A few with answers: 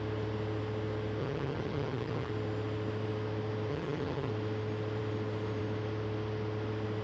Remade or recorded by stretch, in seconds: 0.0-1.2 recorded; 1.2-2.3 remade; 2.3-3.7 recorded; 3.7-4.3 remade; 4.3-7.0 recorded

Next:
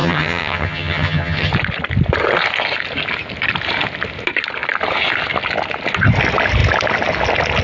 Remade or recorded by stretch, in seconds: 0.0-1.5 remade; 1.5-7.6 recorded

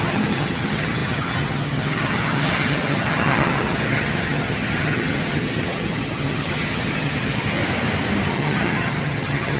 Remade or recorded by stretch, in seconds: 0.0-7.6 remade; 7.6-8.3 recorded; 8.3-9.6 remade

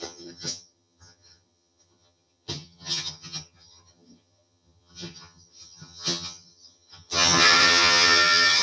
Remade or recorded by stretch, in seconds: 0.0-8.6 remade

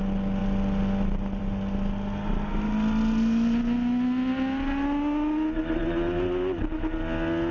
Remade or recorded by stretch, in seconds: 0.0-7.5 recorded

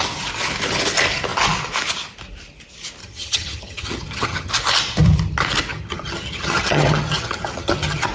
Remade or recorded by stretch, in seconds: 0.0-3.0 recorded; 3.0-4.5 remade; 4.5-5.7 recorded; 5.7-8.1 remade

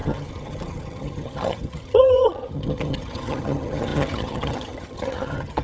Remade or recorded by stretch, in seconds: 0.0-5.6 remade